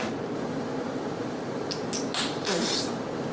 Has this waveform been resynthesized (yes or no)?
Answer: no